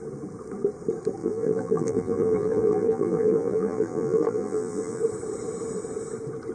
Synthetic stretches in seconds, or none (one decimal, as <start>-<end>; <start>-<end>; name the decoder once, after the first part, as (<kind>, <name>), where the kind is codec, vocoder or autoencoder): 1.2-5.0 (vocoder, BigVGAN v2)

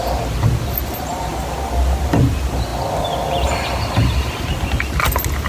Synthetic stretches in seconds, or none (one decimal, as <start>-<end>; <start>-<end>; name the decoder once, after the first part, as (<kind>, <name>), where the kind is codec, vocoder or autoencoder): none

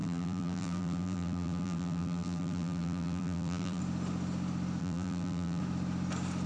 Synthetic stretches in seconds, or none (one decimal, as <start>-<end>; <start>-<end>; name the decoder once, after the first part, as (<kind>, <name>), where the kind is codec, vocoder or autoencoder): 0.0-3.8 (vocoder, BigVGAN v2); 4.8-5.6